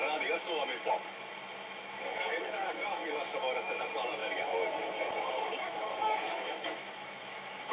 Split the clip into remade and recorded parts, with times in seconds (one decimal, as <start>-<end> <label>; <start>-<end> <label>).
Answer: 0.0-0.7 remade; 0.7-1.9 recorded; 1.9-7.7 remade